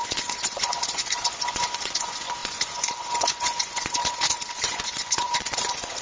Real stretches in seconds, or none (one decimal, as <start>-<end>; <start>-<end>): none

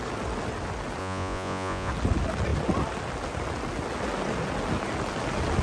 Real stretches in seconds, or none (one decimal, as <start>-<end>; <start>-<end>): 0.0-1.0; 1.9-5.6

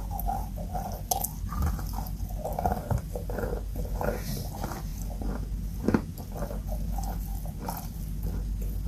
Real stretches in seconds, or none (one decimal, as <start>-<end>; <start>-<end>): 0.0-8.9

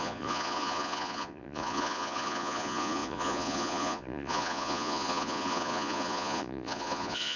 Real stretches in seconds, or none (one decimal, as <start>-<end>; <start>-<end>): none

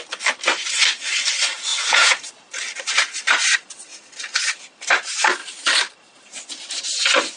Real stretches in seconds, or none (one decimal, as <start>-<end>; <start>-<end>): 0.0-1.7; 2.3-7.4